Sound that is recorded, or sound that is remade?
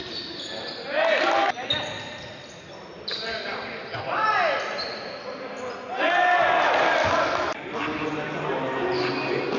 recorded